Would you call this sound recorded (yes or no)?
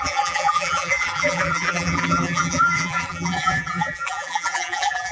no